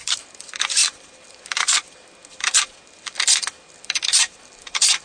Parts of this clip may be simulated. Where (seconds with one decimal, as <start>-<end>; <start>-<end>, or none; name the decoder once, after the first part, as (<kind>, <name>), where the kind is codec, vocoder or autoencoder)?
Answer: none